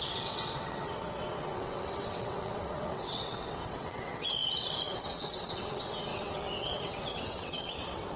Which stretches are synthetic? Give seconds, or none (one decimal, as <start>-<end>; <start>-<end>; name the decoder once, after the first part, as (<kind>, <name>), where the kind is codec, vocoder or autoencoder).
0.0-8.2 (vocoder, WaveNeXt)